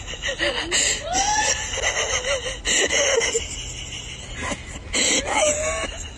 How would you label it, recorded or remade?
recorded